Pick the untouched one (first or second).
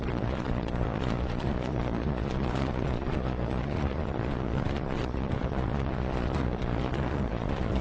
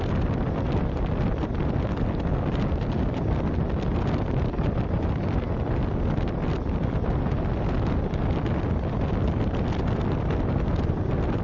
second